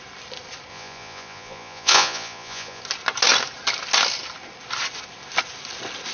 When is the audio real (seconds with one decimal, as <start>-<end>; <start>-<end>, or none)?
0.0-0.7; 2.8-6.1